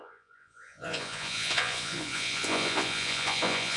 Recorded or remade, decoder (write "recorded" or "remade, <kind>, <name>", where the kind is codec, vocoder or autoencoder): remade, vocoder, Vocos